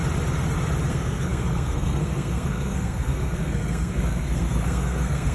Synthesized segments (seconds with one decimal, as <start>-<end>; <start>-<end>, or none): 0.9-5.3